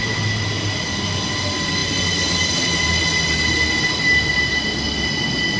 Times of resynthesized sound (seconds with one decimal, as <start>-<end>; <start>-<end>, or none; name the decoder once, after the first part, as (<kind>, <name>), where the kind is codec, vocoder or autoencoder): none